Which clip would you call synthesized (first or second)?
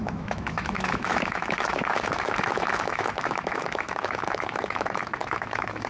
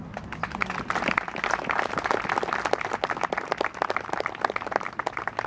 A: first